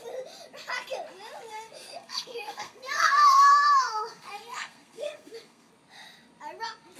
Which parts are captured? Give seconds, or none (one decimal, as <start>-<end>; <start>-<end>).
0.0-1.5; 5.7-7.0